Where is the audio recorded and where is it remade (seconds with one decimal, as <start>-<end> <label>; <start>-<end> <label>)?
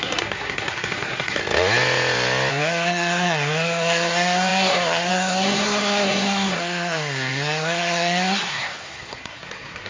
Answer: 0.0-1.4 remade; 1.4-2.5 recorded; 2.5-9.9 remade